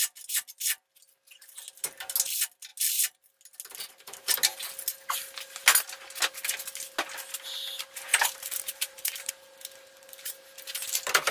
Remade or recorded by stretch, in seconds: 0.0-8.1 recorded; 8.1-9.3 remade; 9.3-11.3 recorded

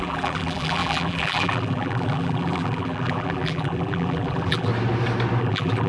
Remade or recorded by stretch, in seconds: 0.0-4.7 remade; 4.7-5.4 recorded; 5.4-5.9 remade

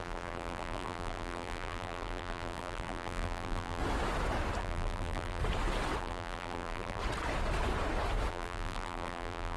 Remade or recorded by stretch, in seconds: 0.0-3.8 remade; 3.8-4.6 recorded; 4.6-5.4 remade; 5.4-6.0 recorded; 6.0-7.0 remade; 7.0-8.3 recorded; 8.3-9.6 remade

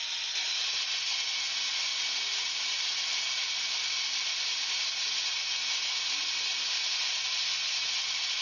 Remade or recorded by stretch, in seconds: 0.0-8.4 recorded

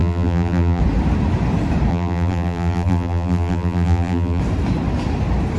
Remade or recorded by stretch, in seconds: 0.0-0.8 remade; 0.8-1.9 recorded; 1.9-4.4 remade; 4.4-5.6 recorded

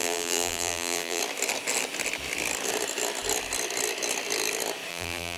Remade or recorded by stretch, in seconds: 0.0-1.2 remade; 1.2-4.9 recorded; 4.9-5.4 remade

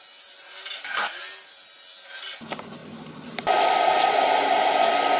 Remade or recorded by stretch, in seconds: 0.0-5.2 recorded